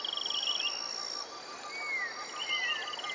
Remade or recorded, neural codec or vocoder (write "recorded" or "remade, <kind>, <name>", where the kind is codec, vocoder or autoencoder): recorded